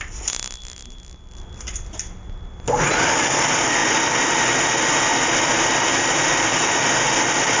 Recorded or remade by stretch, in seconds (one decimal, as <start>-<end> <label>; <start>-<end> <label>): 0.0-7.6 recorded